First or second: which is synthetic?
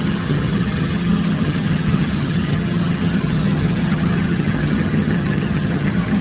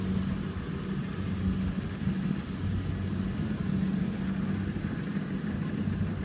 first